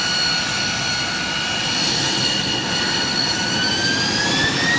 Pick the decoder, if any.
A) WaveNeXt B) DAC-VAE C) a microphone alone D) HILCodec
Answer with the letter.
C